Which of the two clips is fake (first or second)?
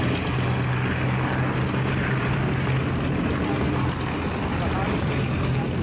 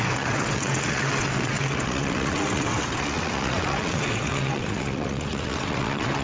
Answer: second